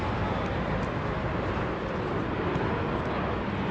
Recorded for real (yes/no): yes